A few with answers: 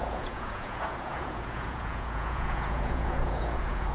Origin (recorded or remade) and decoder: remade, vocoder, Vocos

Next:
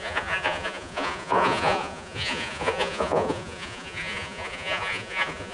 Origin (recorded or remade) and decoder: remade, vocoder, Vocos